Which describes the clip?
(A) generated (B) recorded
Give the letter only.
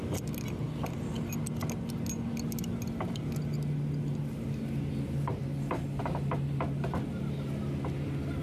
B